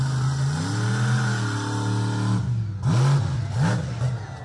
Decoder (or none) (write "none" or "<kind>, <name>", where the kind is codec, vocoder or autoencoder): none